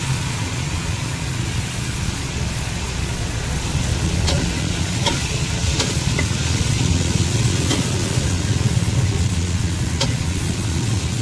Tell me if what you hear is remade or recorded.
remade